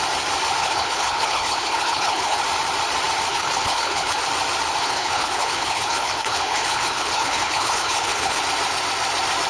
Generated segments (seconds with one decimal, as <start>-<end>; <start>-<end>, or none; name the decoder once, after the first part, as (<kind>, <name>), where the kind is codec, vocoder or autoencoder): 0.6-2.4 (codec, HILCodec); 3.3-4.2; 4.8-8.4